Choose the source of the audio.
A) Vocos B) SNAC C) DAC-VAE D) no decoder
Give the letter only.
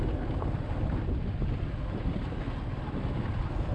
D